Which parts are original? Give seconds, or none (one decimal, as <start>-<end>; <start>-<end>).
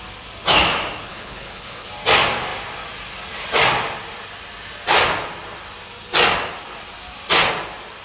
0.0-1.0; 1.9-8.0